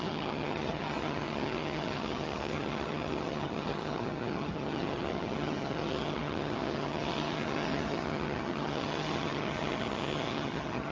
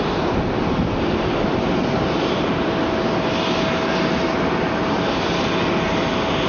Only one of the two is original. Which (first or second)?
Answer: second